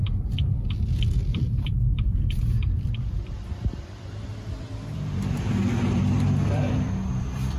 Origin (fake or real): fake